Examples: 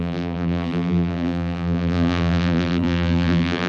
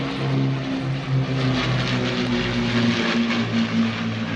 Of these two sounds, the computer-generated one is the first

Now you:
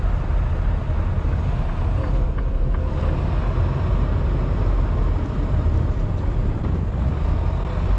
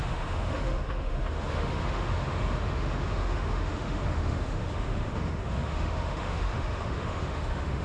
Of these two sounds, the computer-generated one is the second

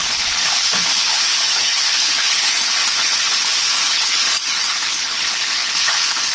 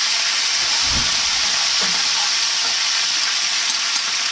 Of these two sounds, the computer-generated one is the first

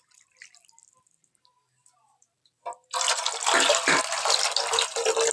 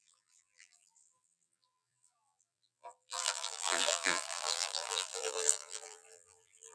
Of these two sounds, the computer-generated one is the second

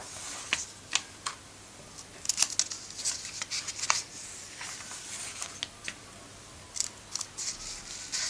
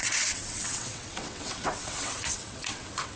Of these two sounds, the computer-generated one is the second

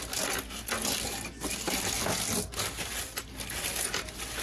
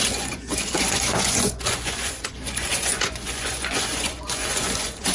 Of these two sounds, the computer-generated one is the second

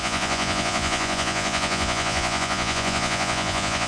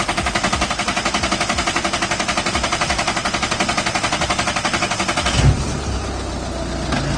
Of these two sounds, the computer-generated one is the first